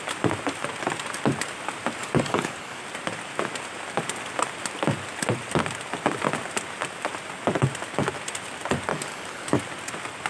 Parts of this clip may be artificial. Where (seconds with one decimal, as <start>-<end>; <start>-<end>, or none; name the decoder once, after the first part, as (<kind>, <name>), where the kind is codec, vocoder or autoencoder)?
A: 2.0-2.8 (codec, DAC); 8.9-9.6